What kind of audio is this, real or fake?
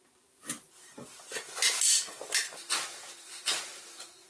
real